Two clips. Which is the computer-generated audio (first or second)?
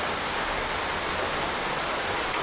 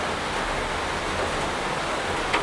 first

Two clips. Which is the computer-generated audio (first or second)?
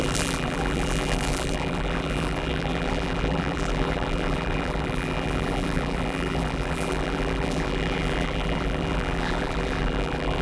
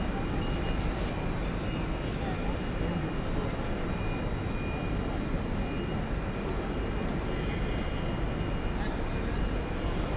first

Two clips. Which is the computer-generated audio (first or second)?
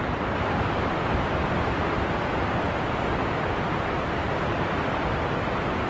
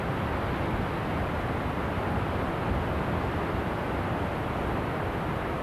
first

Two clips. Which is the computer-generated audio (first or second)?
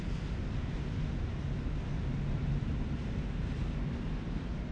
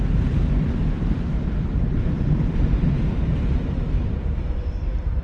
second